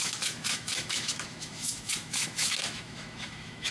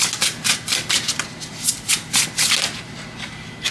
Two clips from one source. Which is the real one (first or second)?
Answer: second